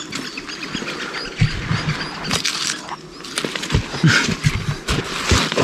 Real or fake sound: real